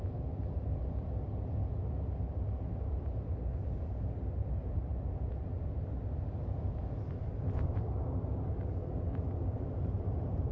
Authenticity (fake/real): real